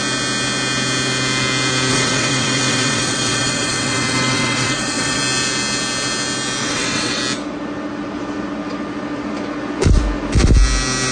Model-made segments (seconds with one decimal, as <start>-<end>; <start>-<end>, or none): 1.9-5.2; 6.6-7.2